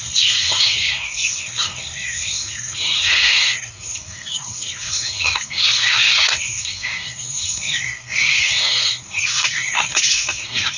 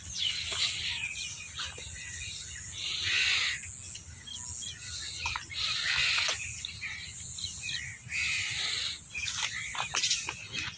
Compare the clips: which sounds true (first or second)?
second